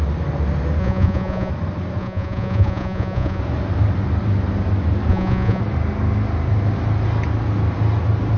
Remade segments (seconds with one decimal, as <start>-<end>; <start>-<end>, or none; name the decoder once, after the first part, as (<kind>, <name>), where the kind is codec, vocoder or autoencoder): 0.8-1.5 (vocoder, Vocos); 2.0-3.4; 5.1-5.6